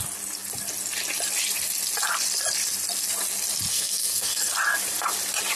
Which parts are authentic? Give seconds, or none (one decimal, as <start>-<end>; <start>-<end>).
0.0-3.7; 4.5-5.6